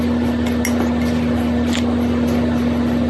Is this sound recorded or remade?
recorded